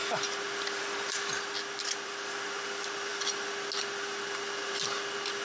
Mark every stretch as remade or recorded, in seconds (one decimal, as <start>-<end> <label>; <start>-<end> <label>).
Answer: 0.0-5.4 recorded